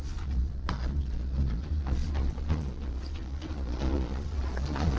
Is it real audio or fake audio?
fake